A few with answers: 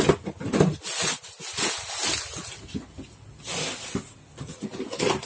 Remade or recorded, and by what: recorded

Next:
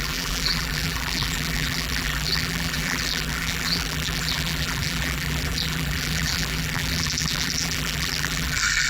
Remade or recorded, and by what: remade, vocoder, BigVGAN v2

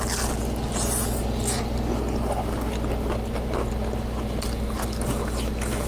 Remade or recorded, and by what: recorded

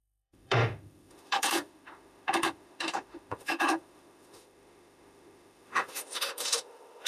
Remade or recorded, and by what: remade, autoencoder, DAC-VAE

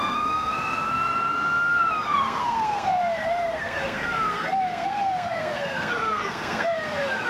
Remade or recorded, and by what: remade, codec, SNAC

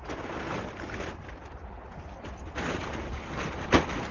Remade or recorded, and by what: recorded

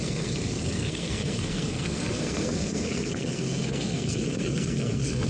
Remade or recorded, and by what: remade, codec, SNAC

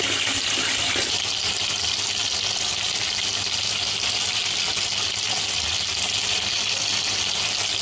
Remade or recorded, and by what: recorded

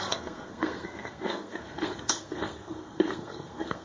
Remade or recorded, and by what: remade, codec, SNAC